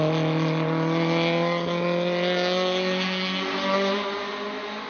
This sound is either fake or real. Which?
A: real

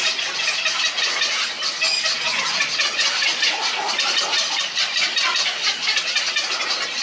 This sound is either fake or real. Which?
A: real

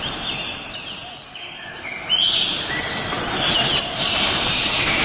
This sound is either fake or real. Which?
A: real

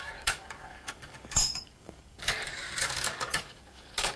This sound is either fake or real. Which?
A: fake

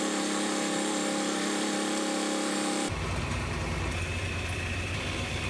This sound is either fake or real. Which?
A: fake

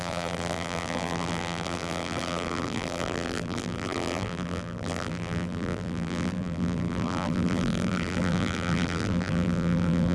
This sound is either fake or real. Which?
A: fake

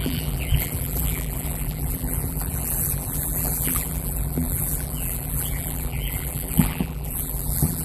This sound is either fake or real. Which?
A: fake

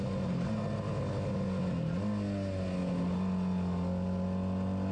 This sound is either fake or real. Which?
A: real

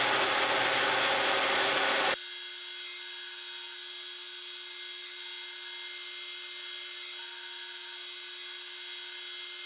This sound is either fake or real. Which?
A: real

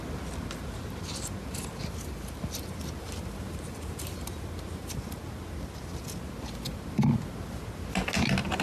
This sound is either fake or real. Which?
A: real